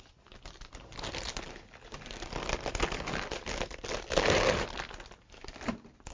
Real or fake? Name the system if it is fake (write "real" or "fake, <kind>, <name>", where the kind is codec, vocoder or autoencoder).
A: real